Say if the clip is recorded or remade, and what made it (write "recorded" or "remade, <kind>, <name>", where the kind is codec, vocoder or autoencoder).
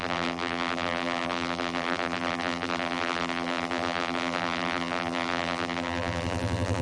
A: remade, vocoder, BigVGAN v2